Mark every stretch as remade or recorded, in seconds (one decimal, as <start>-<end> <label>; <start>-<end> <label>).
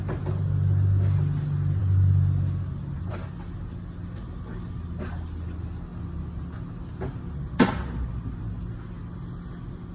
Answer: 0.0-9.9 recorded